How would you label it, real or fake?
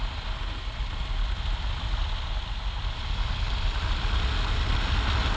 real